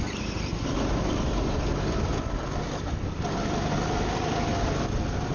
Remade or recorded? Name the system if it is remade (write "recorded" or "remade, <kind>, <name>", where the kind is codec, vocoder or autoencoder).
recorded